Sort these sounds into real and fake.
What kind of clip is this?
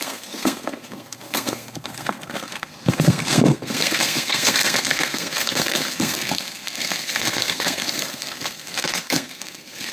fake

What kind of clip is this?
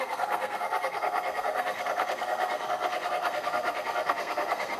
fake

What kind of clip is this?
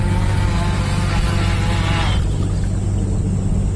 real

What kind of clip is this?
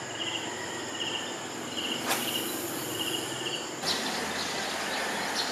real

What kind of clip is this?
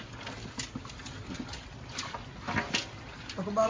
real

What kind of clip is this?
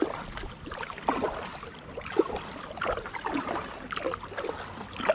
real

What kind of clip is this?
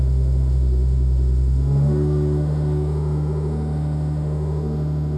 fake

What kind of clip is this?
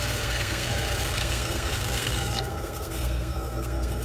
fake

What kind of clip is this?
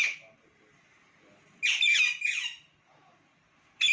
real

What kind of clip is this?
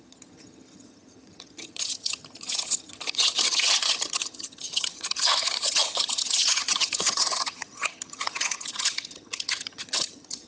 fake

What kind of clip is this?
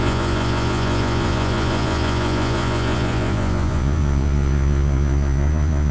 fake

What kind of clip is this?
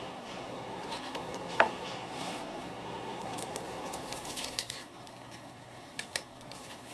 fake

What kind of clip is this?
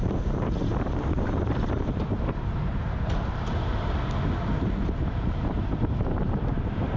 fake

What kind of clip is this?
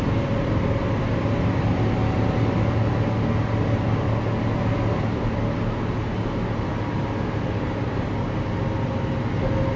real